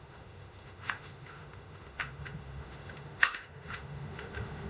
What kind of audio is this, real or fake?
fake